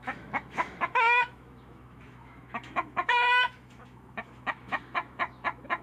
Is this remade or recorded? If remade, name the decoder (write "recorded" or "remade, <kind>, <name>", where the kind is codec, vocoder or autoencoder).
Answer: remade, autoencoder, DAC-VAE